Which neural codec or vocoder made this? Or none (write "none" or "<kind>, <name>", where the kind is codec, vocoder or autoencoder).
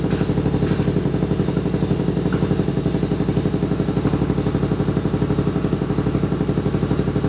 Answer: none